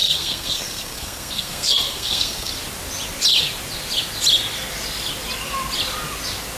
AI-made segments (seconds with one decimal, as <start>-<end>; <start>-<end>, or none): 0.0-2.5